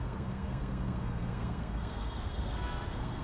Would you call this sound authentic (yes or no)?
no